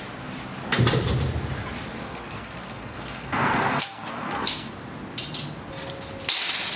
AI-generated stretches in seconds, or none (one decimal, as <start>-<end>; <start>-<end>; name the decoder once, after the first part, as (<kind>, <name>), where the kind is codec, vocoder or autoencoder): 2.0-4.7 (codec, SNAC)